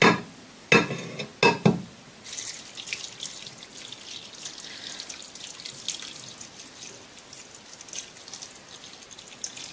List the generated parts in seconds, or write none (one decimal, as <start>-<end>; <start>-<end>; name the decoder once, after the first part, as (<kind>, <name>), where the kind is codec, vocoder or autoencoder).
none